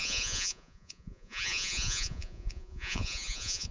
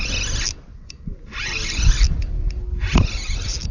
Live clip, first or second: second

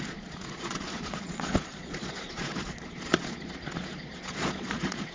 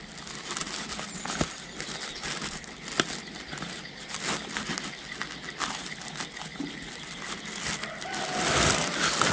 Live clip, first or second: second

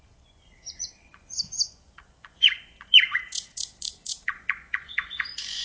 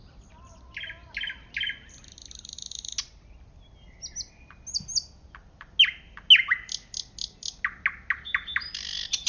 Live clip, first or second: second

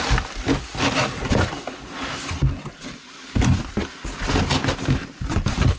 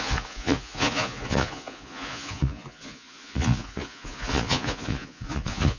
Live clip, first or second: first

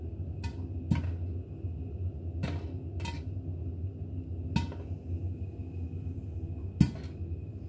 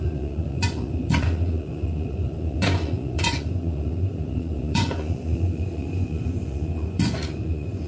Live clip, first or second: first